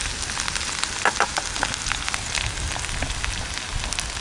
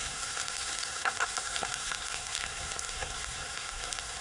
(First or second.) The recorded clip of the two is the first